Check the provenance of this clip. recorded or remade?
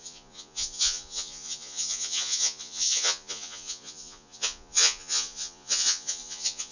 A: remade